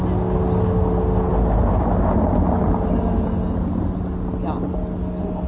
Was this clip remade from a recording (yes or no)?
no